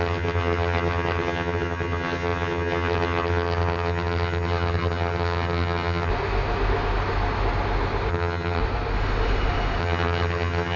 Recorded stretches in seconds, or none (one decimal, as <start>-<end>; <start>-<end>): 6.1-8.1; 8.6-9.8